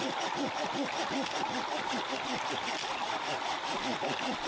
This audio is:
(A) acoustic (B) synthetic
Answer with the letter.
A